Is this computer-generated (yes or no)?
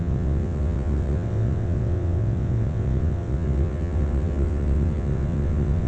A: yes